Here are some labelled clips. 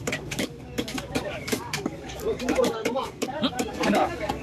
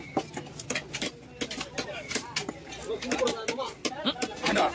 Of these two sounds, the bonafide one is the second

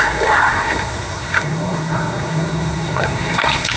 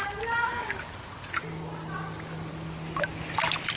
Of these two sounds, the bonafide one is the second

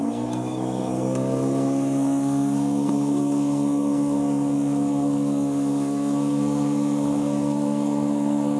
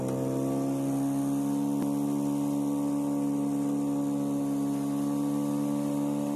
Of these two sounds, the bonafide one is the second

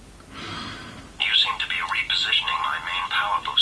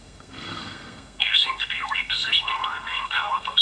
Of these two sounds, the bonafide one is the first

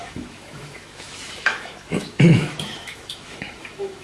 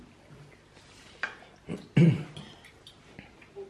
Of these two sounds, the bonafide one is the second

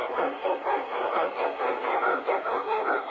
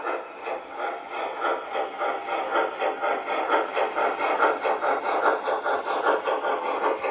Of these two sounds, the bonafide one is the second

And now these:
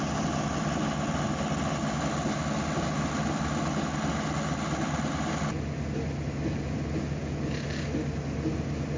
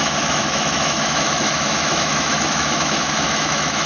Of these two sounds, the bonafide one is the first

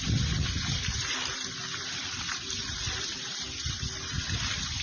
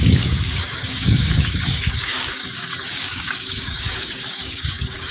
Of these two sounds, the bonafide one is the first